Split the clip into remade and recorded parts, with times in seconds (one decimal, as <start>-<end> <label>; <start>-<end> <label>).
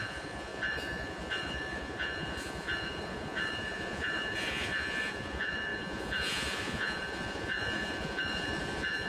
0.0-9.1 remade